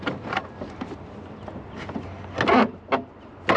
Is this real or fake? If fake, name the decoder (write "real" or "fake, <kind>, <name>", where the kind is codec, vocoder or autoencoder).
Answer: real